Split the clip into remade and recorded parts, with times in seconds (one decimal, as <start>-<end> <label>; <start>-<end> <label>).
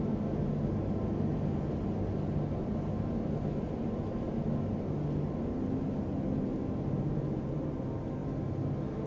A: 0.0-9.1 recorded